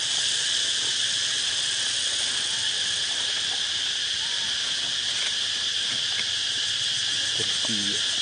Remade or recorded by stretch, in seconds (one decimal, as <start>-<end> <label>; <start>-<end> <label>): 0.0-8.2 recorded